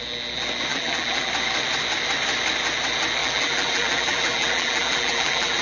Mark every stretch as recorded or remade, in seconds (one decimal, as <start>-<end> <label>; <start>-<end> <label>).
0.0-0.7 recorded; 0.7-1.3 remade; 1.3-3.2 recorded; 3.2-5.6 remade